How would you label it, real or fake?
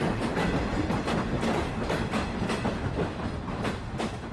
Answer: real